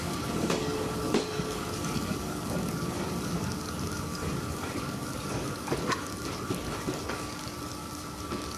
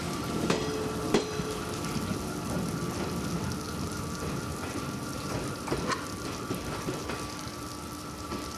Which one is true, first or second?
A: second